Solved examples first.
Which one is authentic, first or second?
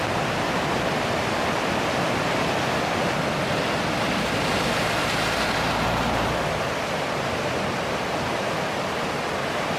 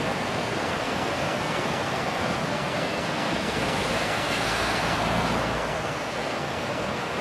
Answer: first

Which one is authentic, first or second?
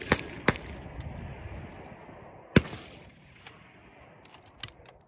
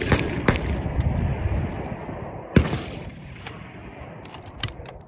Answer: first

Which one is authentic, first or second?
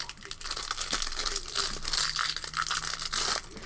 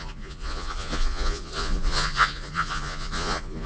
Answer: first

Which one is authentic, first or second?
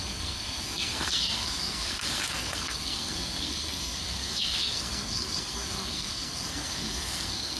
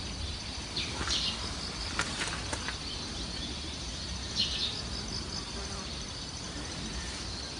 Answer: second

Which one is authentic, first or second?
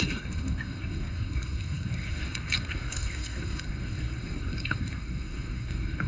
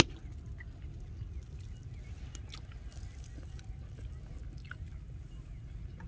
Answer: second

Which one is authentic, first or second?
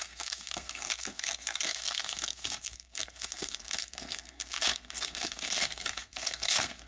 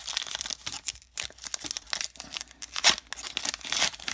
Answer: second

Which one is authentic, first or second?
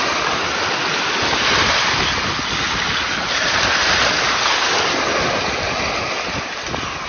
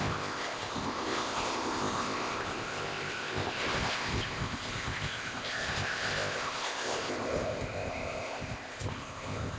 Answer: first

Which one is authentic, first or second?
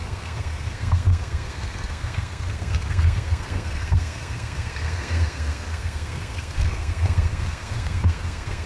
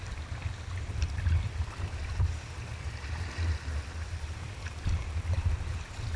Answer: second